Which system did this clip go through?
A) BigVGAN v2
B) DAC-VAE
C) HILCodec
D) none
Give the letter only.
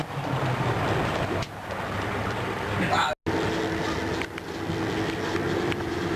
D